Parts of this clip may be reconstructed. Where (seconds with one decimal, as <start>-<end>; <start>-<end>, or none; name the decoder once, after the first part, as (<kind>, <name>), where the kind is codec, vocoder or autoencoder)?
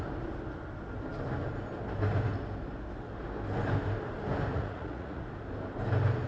4.5-5.2 (vocoder, Vocos)